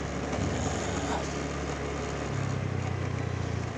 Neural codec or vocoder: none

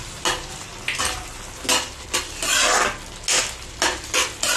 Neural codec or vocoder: none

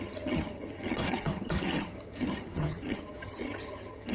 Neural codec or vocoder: vocoder, HiFi-GAN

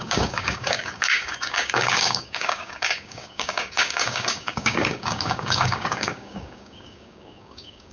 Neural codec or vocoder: codec, DAC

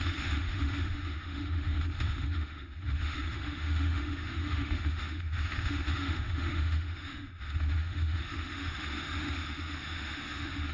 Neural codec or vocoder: autoencoder, DAC-VAE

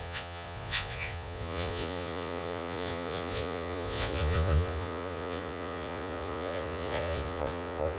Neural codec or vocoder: vocoder, Vocos